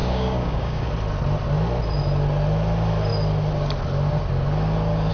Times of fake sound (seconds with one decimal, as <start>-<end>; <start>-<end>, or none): 0.0-0.9

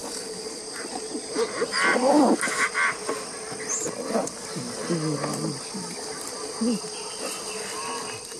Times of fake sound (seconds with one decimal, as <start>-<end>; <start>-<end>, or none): 0.0-0.6

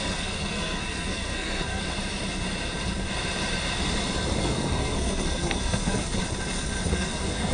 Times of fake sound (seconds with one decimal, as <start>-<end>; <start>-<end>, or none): 0.0-1.8; 4.4-6.2; 6.9-7.5

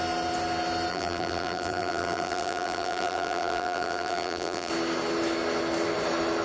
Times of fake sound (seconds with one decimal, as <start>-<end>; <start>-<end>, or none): 0.9-4.7

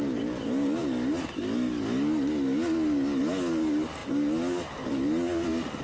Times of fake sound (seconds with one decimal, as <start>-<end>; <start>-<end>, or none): none